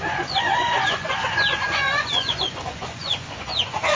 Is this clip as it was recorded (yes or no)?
no